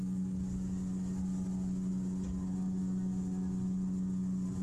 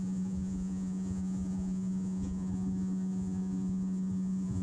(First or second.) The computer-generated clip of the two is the second